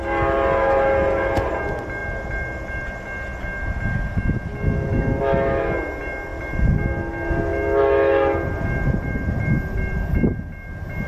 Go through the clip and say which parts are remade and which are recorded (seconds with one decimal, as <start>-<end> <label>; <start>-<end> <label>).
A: 0.0-11.1 recorded